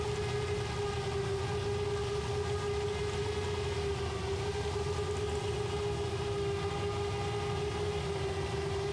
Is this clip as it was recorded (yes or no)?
yes